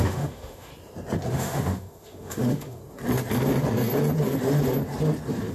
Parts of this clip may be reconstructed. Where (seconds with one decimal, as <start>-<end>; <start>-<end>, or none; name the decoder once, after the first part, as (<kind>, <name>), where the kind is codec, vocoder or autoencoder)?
0.0-0.7 (autoencoder, DAC-VAE); 1.3-2.8